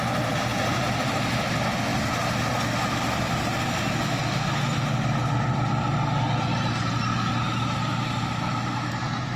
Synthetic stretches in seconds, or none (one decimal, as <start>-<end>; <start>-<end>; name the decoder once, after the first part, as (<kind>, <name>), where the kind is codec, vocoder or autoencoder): 0.5-1.4 (vocoder, BigVGAN v2)